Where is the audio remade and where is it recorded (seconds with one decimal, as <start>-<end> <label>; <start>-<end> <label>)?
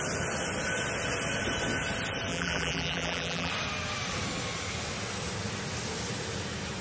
0.0-2.3 recorded; 2.3-3.5 remade; 3.5-6.8 recorded